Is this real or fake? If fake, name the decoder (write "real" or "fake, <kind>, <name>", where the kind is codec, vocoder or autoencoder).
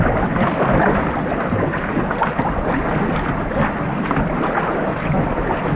real